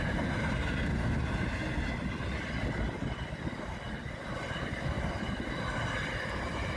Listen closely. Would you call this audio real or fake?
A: real